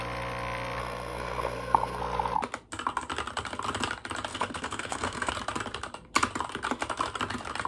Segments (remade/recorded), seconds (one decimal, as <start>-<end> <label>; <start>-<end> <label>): 0.0-0.8 recorded; 0.8-2.0 remade; 2.0-4.3 recorded; 4.3-5.3 remade; 5.3-7.7 recorded

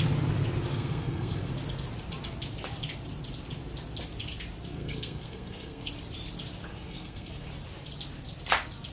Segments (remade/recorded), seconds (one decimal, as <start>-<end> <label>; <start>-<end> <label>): 0.0-0.7 recorded; 0.7-1.5 remade; 1.5-4.7 recorded; 4.7-5.9 remade; 5.9-6.7 recorded; 6.7-7.3 remade; 7.3-8.9 recorded

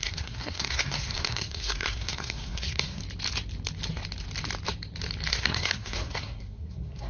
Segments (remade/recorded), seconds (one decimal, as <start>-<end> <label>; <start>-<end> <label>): 0.0-3.0 remade; 3.0-5.3 recorded; 5.3-7.1 remade

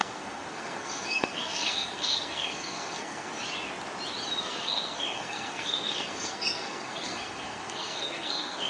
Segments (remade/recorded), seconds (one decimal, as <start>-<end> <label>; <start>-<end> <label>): 0.0-3.3 remade; 3.3-4.4 recorded; 4.4-8.7 remade

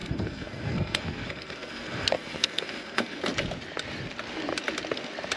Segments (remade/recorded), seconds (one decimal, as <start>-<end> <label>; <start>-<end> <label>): 0.0-3.2 remade; 3.2-5.4 recorded

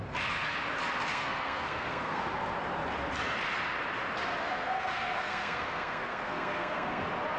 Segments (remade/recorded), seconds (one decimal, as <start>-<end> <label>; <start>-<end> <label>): 0.0-1.1 recorded; 1.1-2.2 remade; 2.2-4.4 recorded; 4.4-7.0 remade; 7.0-7.4 recorded

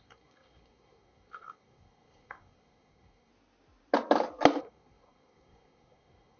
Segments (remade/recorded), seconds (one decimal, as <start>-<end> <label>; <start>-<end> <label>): 0.0-3.3 remade; 3.3-4.6 recorded; 4.6-6.4 remade

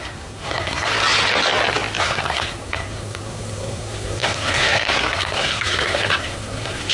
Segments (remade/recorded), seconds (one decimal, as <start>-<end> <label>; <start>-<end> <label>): 0.0-0.9 remade; 0.9-2.0 recorded; 2.0-6.9 remade